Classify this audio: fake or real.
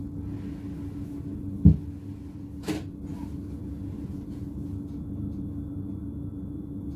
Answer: real